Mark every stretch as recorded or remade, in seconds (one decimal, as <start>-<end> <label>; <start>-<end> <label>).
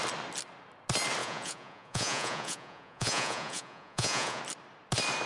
0.0-1.2 recorded; 1.2-4.4 remade; 4.4-5.3 recorded